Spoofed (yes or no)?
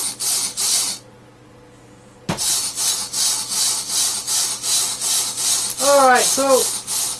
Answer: no